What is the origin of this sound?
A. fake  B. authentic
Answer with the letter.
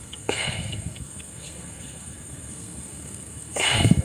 A